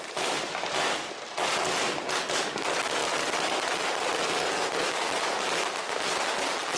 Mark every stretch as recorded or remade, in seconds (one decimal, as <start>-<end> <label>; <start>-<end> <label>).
0.0-6.8 recorded